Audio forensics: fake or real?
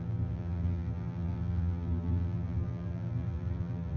fake